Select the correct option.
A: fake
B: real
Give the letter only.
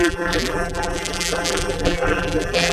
A